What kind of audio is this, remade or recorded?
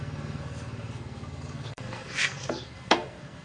remade